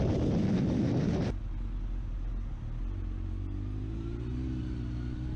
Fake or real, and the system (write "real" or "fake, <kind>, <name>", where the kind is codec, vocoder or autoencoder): real